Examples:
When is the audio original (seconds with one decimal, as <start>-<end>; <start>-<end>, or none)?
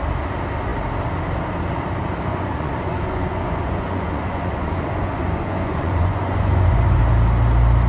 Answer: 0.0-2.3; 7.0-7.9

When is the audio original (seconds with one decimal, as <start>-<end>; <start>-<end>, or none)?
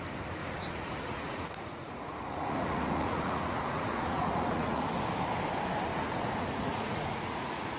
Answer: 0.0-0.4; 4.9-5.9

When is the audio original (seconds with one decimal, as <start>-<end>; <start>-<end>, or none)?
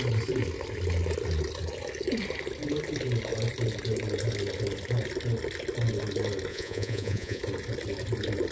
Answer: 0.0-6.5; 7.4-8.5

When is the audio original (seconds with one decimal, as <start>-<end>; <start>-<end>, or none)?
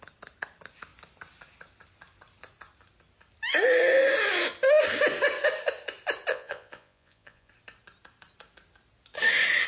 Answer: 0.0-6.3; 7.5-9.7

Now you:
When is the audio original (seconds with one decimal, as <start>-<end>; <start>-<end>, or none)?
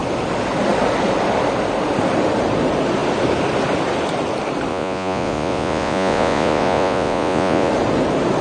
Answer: 0.0-4.7; 7.7-8.4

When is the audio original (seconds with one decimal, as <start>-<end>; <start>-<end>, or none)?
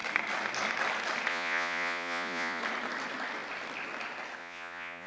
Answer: 0.0-1.3; 2.6-4.4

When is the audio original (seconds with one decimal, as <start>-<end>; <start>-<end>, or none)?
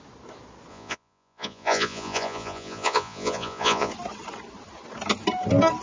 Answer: 0.0-0.7; 3.9-5.8